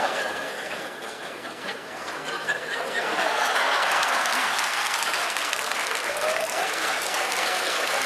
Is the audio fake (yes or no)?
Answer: yes